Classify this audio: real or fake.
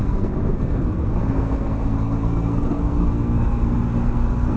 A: fake